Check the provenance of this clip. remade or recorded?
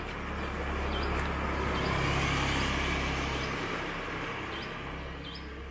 recorded